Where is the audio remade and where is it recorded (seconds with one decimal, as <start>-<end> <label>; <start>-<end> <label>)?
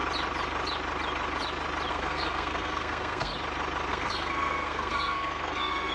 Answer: 0.0-1.9 recorded; 1.9-3.3 remade; 3.3-3.9 recorded; 3.9-5.9 remade